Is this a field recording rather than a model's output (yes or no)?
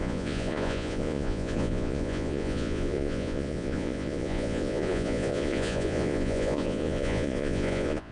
no